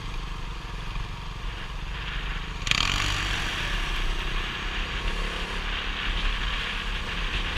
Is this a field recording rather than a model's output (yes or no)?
yes